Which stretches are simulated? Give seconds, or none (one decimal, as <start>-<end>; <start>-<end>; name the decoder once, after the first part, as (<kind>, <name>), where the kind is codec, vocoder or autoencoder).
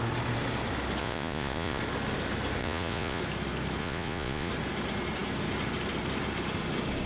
1.0-1.8 (vocoder, Vocos); 2.6-3.2; 3.8-4.5